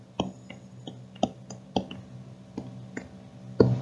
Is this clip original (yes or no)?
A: yes